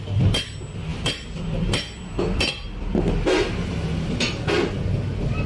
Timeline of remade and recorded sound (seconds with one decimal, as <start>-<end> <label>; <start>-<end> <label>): 0.0-5.5 recorded